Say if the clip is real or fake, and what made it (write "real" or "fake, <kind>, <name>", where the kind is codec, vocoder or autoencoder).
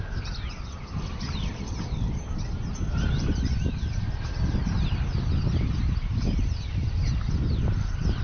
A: fake, vocoder, BigVGAN v2